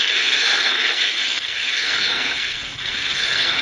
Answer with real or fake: fake